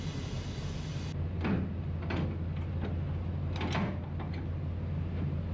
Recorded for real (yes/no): yes